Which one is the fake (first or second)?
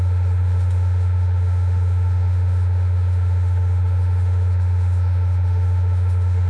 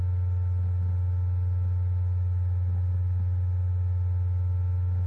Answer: first